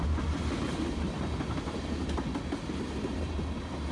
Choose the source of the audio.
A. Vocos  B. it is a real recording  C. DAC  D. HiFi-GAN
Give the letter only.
B